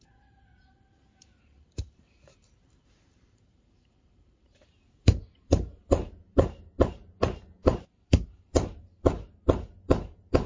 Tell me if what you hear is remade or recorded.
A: remade